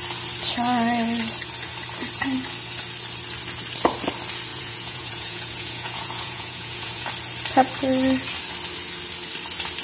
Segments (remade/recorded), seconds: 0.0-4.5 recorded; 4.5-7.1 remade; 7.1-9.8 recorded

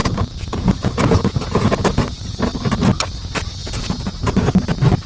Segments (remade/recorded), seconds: 0.0-2.4 remade; 2.4-3.6 recorded; 3.6-4.5 remade; 4.5-5.1 recorded